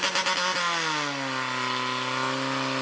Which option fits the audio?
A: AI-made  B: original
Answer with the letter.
B